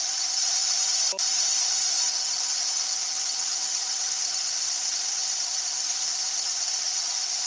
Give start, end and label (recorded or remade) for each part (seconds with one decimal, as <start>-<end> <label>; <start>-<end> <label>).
0.0-7.5 recorded

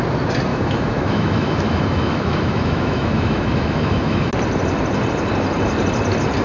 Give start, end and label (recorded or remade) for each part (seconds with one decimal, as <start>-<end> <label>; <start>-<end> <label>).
0.0-0.5 recorded; 0.5-4.3 remade; 4.3-6.4 recorded

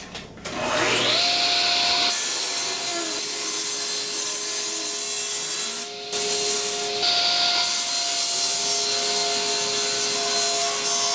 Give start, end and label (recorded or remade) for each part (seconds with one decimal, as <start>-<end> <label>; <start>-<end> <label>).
0.0-11.1 recorded

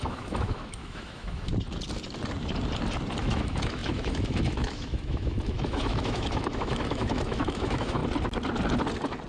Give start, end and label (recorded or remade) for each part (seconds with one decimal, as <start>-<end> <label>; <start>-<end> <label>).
0.0-1.5 remade; 1.5-3.2 recorded; 3.2-8.0 remade; 8.0-9.3 recorded

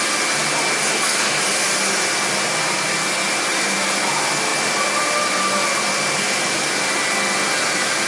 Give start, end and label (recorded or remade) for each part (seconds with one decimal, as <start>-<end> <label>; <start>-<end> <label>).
0.0-8.1 recorded

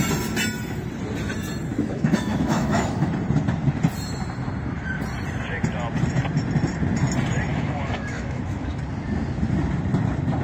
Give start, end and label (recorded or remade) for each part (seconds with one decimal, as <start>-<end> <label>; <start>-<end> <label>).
0.0-1.7 recorded; 1.7-3.1 remade; 3.1-7.5 recorded; 7.5-8.8 remade; 8.8-10.4 recorded

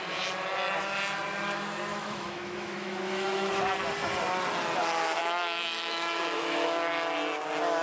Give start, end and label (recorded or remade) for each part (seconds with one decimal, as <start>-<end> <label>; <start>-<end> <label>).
0.0-1.9 recorded; 1.9-3.5 remade; 3.5-5.2 recorded; 5.2-6.9 remade; 6.9-7.8 recorded

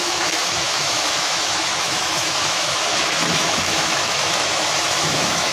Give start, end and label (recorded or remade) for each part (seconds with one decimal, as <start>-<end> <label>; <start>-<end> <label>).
0.0-5.5 remade